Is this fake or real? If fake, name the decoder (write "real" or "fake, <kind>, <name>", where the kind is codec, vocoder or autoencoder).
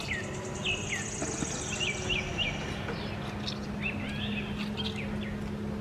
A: real